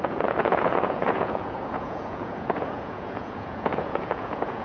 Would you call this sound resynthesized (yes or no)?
yes